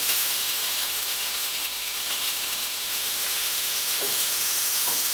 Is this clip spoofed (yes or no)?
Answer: yes